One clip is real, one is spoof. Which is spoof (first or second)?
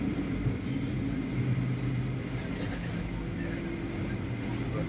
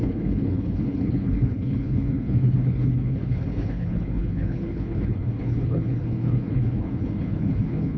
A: second